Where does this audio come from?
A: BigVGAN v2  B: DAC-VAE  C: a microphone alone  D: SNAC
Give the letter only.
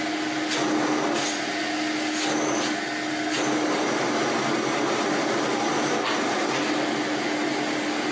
C